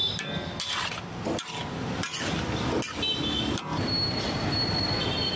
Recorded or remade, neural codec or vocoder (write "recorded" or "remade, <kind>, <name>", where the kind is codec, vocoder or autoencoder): recorded